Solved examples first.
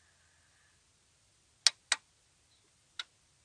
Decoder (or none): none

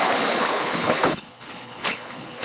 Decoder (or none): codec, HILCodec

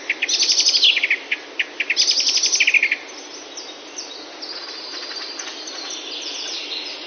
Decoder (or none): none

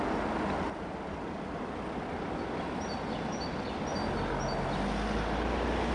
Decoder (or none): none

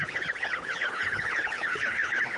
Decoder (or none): codec, HILCodec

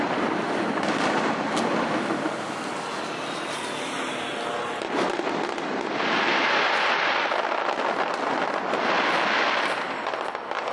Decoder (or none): none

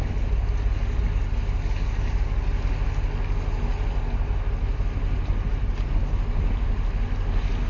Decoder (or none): none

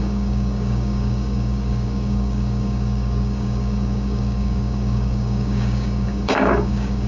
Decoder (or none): codec, DAC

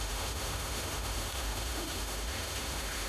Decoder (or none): autoencoder, DAC-VAE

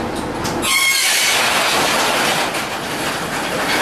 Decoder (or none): none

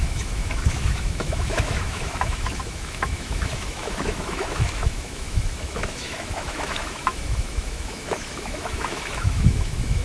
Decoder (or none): autoencoder, DAC-VAE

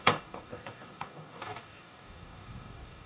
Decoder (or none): codec, DAC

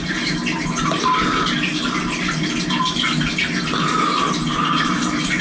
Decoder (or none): none